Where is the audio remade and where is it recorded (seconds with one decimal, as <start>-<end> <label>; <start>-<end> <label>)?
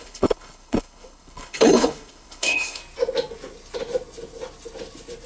0.0-2.8 remade; 2.8-5.3 recorded